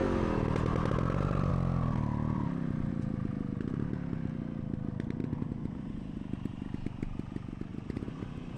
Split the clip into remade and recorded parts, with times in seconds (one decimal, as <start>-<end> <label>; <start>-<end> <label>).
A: 0.0-5.2 recorded; 5.2-6.2 remade; 6.2-7.7 recorded; 7.7-8.6 remade